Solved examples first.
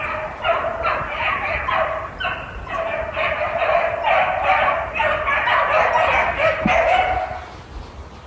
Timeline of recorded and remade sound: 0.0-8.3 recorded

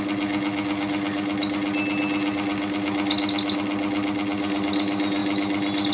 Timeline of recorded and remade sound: 0.0-5.9 recorded

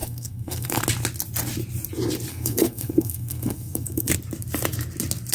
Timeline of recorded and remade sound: 0.0-0.8 remade; 0.8-2.3 recorded; 2.3-4.1 remade; 4.1-5.3 recorded

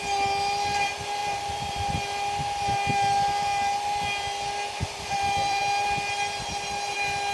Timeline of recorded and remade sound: 0.0-1.2 recorded; 1.2-1.7 remade; 1.7-4.8 recorded; 4.8-5.6 remade; 5.6-7.3 recorded

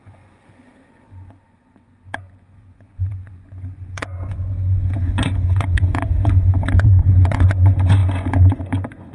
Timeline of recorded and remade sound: 0.0-9.1 remade

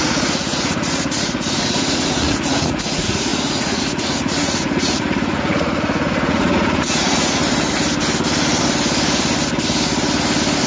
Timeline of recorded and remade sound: 0.0-7.4 remade; 7.4-10.7 recorded